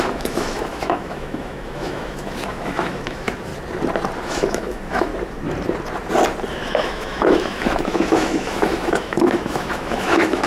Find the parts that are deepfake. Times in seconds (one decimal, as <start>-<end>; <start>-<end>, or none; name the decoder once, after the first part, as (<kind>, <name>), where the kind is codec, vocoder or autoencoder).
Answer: 0.0-3.5 (autoencoder, DAC-VAE); 4.2-5.1; 6.5-10.5